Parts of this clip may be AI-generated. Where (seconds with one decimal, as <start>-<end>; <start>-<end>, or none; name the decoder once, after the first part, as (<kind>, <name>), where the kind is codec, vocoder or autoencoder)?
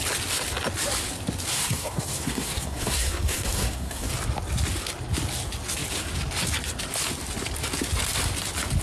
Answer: 1.5-4.1 (codec, SNAC)